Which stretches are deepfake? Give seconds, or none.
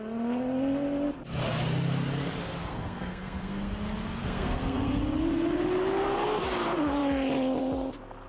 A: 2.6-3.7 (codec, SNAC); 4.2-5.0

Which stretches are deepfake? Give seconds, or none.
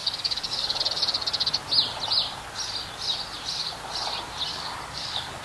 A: 0.0-0.8 (codec, DAC); 4.5-5.4